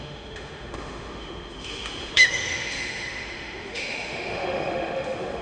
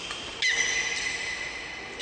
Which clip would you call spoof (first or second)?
first